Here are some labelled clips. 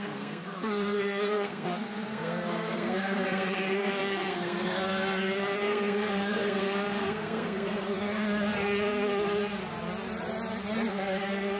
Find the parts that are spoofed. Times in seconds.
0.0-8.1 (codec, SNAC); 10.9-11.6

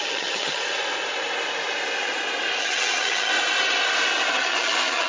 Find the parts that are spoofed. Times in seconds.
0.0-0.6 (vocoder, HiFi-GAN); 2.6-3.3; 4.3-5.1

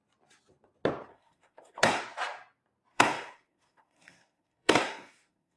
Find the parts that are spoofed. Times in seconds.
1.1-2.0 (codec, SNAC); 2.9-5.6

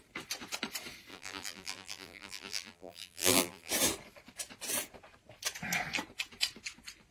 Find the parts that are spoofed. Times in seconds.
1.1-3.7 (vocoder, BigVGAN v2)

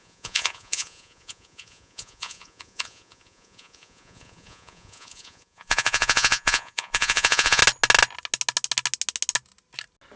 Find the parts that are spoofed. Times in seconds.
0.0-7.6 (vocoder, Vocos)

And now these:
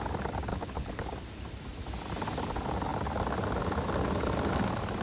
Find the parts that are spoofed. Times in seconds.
0.5-1.1 (codec, HILCodec)